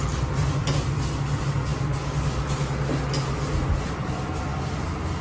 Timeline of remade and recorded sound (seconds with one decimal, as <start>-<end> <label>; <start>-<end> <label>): 0.0-5.2 recorded